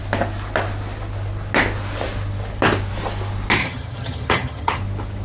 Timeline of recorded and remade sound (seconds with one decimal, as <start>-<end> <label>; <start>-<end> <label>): 0.0-3.6 recorded; 3.6-4.8 remade; 4.8-5.2 recorded